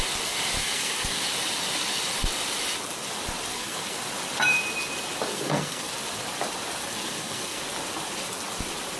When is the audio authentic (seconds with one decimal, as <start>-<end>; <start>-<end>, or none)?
0.0-0.6; 1.2-3.5; 4.1-5.3; 5.9-6.8; 7.6-9.0